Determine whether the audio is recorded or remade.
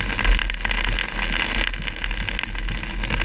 recorded